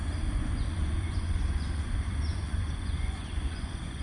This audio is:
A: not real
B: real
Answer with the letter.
A